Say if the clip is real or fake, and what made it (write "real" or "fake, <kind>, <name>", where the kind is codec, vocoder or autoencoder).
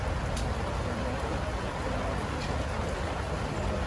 real